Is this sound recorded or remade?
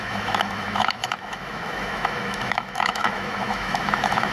remade